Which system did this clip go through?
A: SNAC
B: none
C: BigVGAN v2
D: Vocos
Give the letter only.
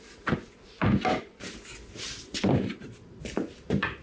B